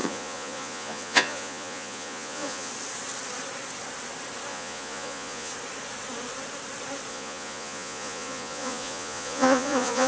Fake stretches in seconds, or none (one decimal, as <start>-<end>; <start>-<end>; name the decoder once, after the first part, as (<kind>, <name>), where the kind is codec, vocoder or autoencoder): 0.0-2.7 (vocoder, Vocos); 4.5-5.5; 7.1-10.1